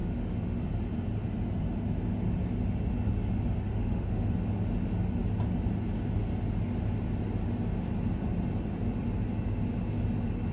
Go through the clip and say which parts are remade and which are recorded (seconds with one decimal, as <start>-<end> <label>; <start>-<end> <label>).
0.0-0.6 remade; 0.6-3.7 recorded; 3.7-4.3 remade; 4.3-10.5 recorded